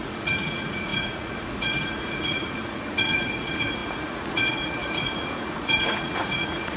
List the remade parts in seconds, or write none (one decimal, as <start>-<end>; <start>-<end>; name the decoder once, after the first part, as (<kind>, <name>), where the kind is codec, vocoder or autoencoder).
0.0-6.8 (vocoder, Vocos)